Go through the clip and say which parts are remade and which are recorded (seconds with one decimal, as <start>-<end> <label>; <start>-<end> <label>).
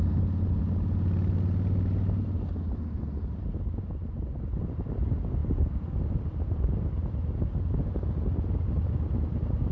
0.0-9.7 recorded